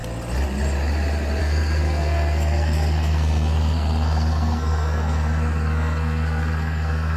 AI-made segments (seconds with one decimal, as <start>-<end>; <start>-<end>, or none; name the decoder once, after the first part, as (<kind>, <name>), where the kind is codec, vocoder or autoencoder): 1.4-7.2 (codec, SNAC)